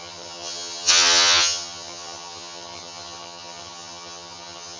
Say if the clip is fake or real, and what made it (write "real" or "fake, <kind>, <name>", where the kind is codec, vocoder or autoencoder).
fake, vocoder, HiFi-GAN